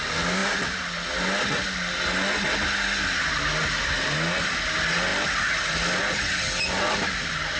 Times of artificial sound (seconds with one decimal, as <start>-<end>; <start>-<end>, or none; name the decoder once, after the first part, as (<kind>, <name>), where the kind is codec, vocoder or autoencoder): none

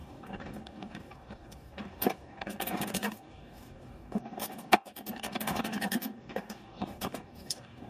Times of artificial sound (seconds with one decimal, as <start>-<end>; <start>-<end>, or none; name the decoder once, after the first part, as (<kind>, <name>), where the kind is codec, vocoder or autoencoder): 0.0-7.9 (codec, DAC)

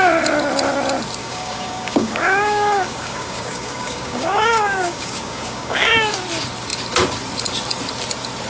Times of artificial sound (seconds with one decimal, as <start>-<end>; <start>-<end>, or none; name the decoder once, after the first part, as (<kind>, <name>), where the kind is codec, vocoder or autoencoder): 1.2-6.1 (codec, DAC)

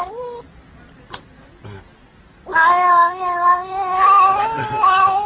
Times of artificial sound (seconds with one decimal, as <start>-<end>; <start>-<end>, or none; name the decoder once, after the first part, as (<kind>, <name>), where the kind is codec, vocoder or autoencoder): none